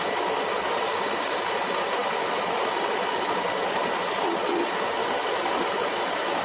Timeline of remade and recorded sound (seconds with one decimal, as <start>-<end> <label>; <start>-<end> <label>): 0.0-6.4 recorded